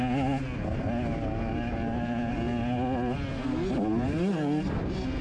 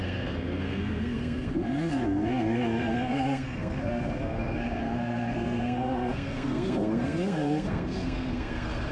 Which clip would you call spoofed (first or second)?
second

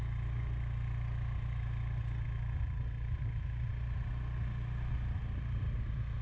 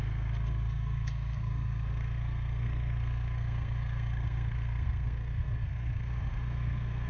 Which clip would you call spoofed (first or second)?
second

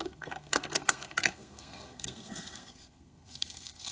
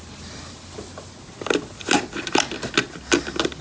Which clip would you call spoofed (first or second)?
first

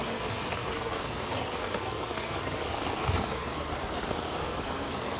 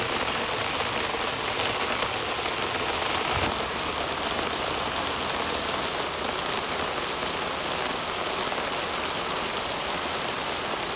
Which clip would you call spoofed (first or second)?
first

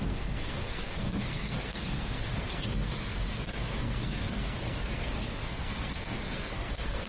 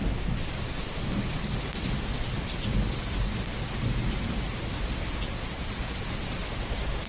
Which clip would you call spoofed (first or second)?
first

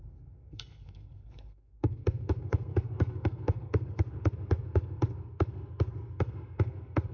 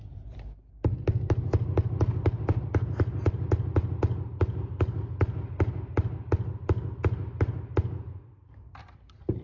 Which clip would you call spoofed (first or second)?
first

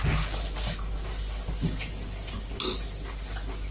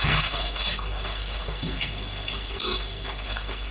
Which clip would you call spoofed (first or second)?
second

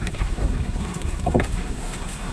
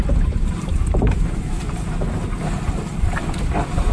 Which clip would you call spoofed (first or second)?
first